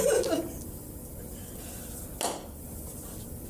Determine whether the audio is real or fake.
real